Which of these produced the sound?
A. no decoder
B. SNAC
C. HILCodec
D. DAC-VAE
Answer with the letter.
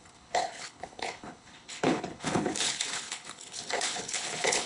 C